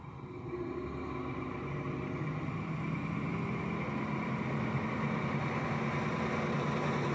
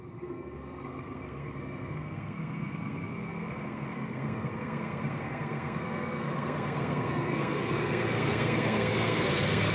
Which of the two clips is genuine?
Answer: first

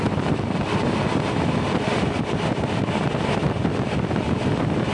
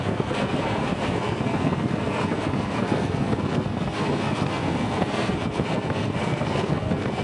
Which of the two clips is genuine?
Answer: first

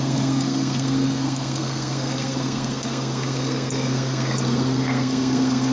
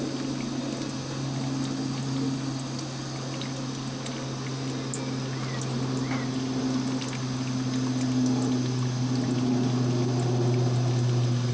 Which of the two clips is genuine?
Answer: second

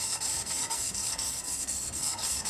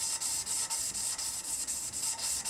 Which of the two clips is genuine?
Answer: second